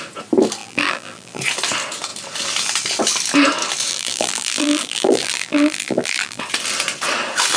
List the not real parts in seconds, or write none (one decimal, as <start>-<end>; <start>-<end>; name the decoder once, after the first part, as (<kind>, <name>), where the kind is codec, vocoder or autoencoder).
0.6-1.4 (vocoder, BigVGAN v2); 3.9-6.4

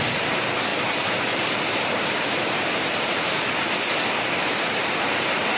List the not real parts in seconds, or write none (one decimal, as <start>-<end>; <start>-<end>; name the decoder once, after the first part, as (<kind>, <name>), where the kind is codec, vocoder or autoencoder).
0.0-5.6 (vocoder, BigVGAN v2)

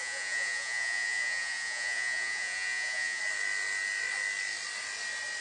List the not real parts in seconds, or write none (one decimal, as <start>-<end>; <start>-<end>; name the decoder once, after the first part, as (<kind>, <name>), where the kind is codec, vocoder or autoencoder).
0.0-3.2 (vocoder, Vocos)